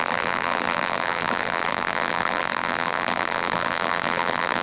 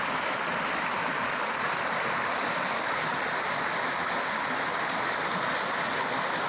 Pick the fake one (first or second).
first